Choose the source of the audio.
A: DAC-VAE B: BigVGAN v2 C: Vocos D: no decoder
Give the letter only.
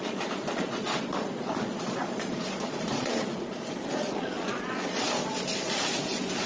C